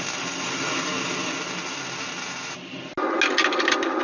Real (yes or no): yes